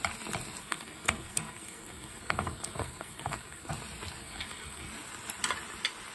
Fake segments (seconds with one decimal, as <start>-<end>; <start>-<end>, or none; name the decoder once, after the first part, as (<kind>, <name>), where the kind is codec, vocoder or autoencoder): 0.6-3.7 (codec, SNAC); 4.2-4.9